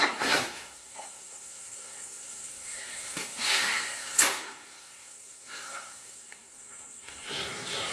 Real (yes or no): no